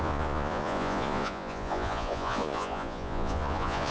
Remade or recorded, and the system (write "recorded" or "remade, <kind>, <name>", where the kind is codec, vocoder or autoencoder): remade, vocoder, Vocos